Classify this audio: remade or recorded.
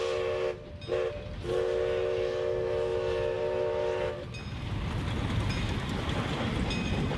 recorded